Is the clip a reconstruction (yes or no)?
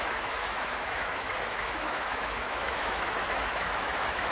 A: yes